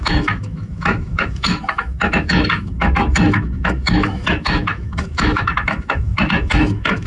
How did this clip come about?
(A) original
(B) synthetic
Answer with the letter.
B